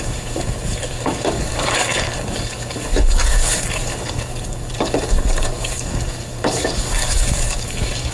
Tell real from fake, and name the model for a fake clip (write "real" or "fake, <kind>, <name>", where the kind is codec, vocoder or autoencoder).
fake, codec, DAC